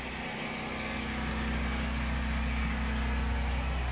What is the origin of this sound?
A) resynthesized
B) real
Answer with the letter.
B